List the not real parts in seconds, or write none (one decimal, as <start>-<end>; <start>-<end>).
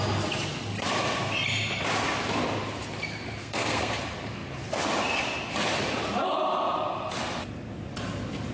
3.4-3.9